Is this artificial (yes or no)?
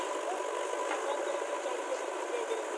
no